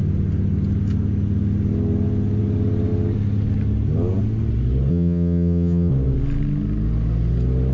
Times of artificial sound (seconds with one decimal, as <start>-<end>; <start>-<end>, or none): 4.9-5.9